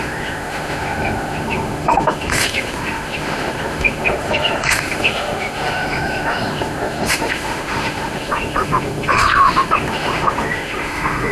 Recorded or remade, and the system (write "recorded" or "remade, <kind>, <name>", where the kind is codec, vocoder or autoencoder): remade, autoencoder, DAC-VAE